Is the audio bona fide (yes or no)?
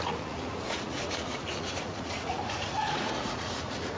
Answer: no